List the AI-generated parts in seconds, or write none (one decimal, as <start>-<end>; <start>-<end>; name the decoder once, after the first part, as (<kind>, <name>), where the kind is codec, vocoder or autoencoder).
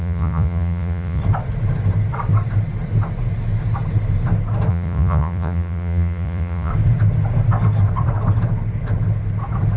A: 0.0-1.2 (vocoder, Vocos); 4.7-6.7